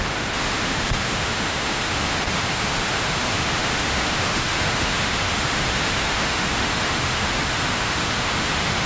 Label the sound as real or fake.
fake